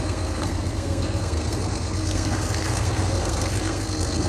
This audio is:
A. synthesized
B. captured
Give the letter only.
A